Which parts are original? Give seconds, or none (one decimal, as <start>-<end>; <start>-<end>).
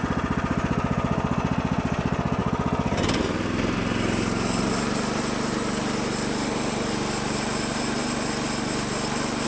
0.0-9.5